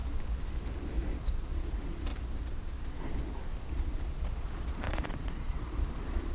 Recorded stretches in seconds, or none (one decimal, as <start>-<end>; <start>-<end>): 0.0-1.1; 2.1-3.7